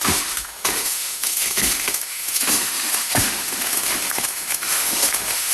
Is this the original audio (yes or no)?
no